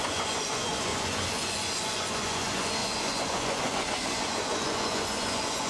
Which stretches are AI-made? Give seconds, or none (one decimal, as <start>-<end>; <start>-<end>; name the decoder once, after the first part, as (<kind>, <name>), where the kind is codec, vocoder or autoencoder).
0.0-5.7 (vocoder, Vocos)